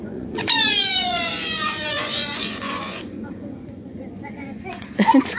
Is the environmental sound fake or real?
fake